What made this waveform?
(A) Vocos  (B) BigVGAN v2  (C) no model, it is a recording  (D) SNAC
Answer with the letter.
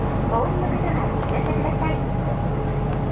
C